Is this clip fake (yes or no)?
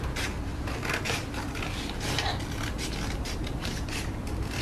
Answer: no